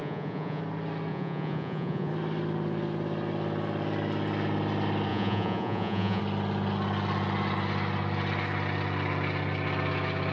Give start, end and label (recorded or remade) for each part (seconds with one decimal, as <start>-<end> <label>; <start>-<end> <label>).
0.0-0.6 remade; 0.6-1.1 recorded; 1.1-2.1 remade; 2.1-5.1 recorded; 5.1-6.2 remade; 6.2-10.3 recorded